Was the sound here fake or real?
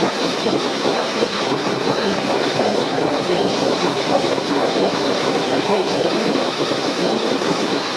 fake